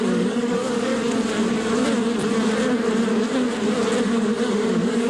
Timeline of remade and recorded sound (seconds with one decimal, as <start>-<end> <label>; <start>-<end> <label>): 0.0-0.9 remade; 0.9-4.0 recorded; 4.0-5.1 remade